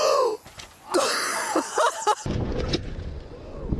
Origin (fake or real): fake